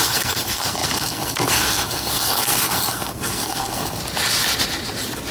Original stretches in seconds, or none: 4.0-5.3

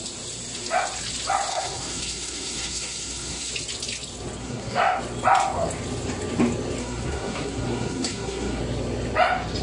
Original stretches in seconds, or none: 0.0-1.5; 3.5-4.4; 5.0-6.8; 8.6-9.6

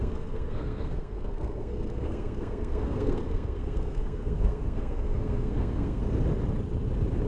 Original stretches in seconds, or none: 6.0-7.3

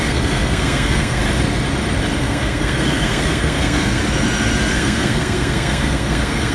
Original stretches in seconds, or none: 1.2-2.2; 4.0-4.7

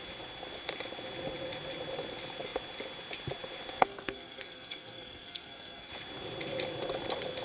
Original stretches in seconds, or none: 0.0-3.8; 5.9-7.4

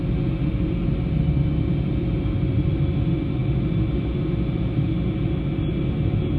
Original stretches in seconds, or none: 0.0-6.4

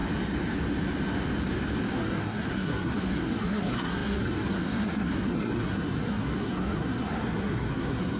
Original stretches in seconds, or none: 0.0-1.9

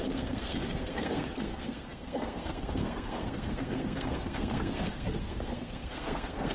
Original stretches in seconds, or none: none